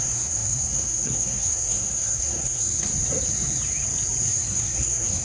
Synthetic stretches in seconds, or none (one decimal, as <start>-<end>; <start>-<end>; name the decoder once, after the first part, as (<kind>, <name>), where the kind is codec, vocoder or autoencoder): 0.0-2.9 (codec, SNAC); 4.2-5.2